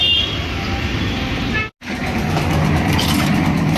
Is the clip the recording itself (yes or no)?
yes